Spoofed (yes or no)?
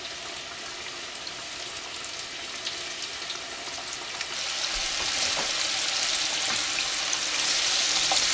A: no